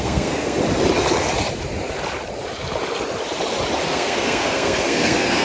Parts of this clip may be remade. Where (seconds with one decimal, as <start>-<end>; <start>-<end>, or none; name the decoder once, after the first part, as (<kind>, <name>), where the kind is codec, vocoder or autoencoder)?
0.0-0.6 (codec, SNAC); 3.8-5.4